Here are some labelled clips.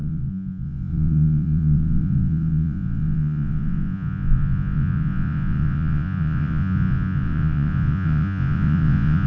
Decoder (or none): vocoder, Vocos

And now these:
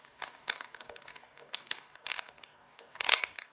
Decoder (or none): codec, DAC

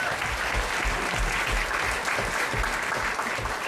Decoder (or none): none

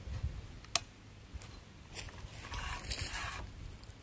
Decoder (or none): none